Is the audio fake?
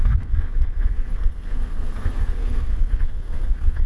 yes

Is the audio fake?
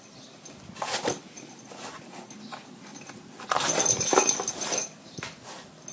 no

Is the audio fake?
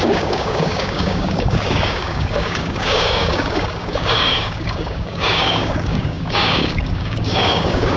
yes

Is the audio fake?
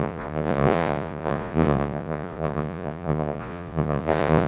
yes